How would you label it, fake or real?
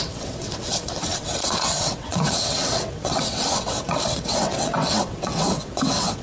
fake